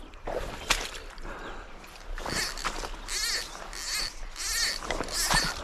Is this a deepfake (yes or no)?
no